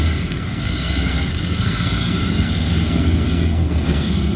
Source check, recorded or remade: remade